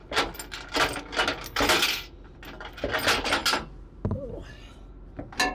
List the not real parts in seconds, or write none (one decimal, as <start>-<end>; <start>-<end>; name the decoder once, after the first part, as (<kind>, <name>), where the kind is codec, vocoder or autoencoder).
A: none

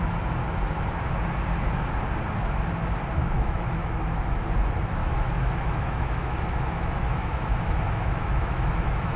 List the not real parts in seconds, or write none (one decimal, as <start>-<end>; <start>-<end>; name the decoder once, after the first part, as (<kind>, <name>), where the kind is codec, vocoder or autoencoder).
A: 3.2-4.0 (autoencoder, DAC-VAE); 5.0-9.2

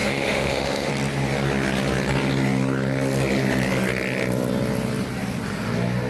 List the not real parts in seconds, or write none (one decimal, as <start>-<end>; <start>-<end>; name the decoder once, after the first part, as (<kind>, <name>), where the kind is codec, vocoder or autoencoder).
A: 0.0-0.9 (autoencoder, DAC-VAE)

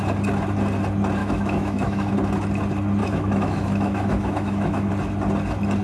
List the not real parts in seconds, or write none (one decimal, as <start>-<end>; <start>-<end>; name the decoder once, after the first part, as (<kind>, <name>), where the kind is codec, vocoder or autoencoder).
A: 1.2-2.1 (autoencoder, DAC-VAE); 3.0-4.9

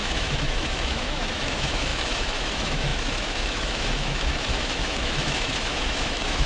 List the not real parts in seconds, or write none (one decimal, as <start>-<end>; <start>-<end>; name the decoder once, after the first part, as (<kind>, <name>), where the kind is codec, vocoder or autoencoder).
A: 0.0-6.5 (autoencoder, DAC-VAE)

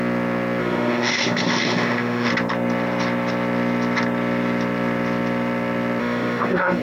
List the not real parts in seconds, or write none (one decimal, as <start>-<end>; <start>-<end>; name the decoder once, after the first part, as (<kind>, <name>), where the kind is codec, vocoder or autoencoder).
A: 0.6-2.3 (autoencoder, DAC-VAE); 6.0-6.8